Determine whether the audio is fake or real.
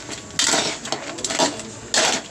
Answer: real